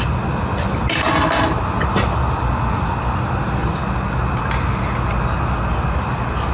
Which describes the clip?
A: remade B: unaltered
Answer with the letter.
B